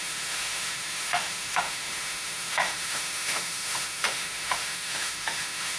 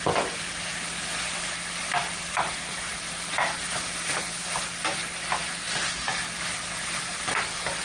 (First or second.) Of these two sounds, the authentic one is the second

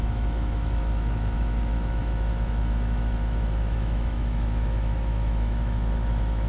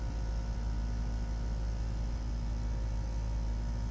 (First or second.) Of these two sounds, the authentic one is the second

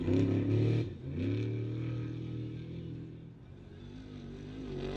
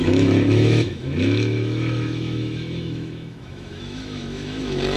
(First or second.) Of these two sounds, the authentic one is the first